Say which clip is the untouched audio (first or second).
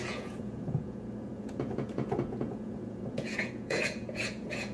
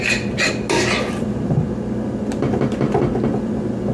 second